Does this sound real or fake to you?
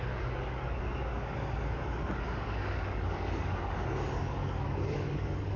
fake